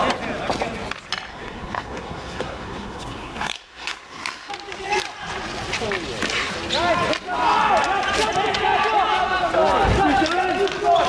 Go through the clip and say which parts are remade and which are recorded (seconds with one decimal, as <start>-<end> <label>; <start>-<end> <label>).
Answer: 0.0-1.3 recorded; 1.3-4.5 remade; 4.5-11.1 recorded